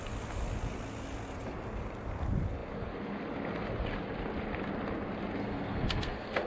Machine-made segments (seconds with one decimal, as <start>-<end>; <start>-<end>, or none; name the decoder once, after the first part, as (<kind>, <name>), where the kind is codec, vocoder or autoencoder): 5.4-6.5 (codec, SNAC)